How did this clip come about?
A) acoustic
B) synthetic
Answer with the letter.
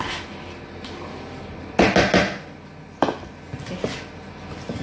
A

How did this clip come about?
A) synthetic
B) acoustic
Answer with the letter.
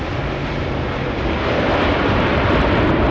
B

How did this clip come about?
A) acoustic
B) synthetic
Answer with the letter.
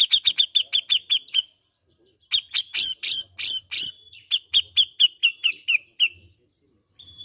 A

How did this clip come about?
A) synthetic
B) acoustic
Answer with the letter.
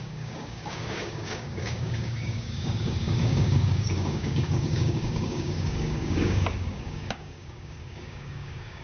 A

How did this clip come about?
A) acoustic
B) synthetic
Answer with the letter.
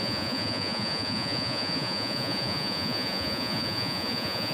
B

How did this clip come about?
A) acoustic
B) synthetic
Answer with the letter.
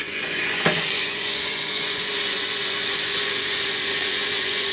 B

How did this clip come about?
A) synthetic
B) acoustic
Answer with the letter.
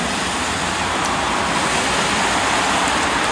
B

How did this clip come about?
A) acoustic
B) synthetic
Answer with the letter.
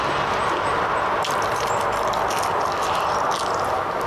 A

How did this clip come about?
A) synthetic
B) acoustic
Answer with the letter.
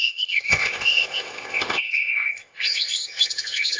A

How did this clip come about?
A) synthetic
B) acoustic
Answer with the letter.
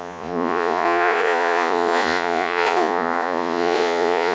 A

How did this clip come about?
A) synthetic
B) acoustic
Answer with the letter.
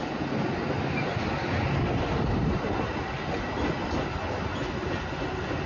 B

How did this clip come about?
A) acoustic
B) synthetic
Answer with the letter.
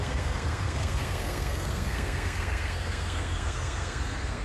B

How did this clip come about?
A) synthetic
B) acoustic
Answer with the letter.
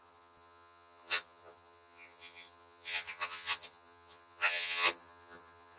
A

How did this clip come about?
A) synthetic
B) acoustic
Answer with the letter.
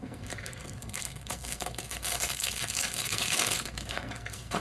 A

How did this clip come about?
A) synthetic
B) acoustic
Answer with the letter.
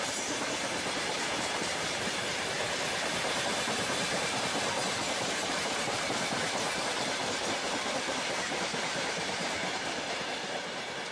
A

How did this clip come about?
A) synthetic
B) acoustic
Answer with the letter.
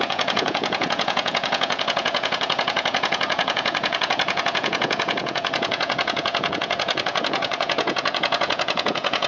A